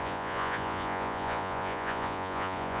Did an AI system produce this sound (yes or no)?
yes